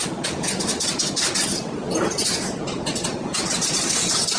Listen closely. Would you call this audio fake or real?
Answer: real